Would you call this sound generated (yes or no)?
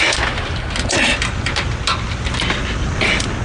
no